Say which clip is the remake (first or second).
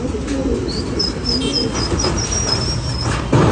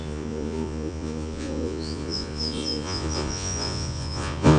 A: second